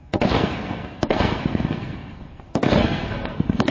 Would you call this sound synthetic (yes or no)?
yes